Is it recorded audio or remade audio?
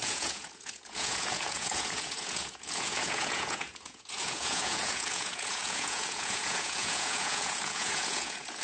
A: remade